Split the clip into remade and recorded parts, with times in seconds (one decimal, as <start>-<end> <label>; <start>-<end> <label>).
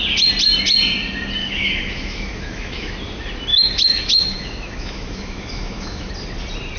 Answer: 0.0-1.4 recorded; 1.4-2.9 remade; 2.9-3.5 recorded; 3.5-6.1 remade; 6.1-6.8 recorded